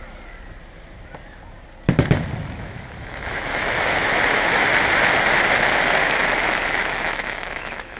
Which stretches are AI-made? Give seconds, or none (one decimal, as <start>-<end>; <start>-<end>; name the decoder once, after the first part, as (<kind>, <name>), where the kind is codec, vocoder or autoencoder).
2.4-4.7 (autoencoder, DAC-VAE); 6.0-8.0